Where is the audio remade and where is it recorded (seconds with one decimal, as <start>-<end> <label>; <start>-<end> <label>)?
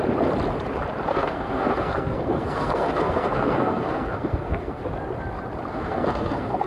0.0-1.1 recorded; 1.1-4.8 remade; 4.8-5.7 recorded; 5.7-6.7 remade